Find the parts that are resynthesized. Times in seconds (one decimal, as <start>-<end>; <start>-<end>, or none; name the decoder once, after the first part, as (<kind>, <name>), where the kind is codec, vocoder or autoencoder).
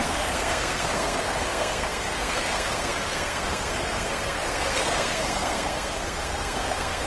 0.0-7.1 (codec, SNAC)